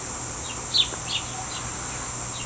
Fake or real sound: real